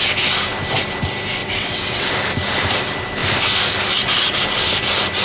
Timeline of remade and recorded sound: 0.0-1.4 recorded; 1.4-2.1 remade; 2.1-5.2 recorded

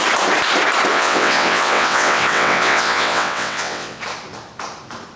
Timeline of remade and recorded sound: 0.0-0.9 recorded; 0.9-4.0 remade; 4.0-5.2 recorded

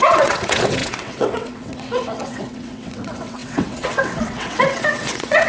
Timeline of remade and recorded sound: 0.0-5.5 remade

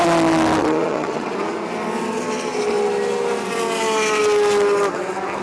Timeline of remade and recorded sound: 0.0-0.6 recorded; 0.6-1.4 remade; 1.4-5.4 recorded

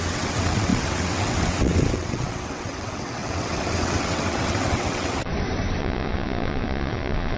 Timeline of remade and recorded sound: 0.0-5.3 remade; 5.3-5.8 recorded; 5.8-7.4 remade